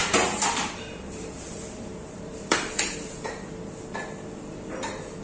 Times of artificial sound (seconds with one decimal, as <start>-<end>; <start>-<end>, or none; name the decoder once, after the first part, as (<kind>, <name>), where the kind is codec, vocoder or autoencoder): 0.0-3.1 (vocoder, BigVGAN v2)